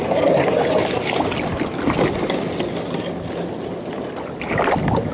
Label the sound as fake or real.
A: real